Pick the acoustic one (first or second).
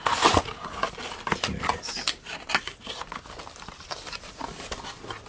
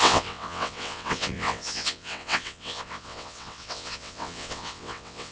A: first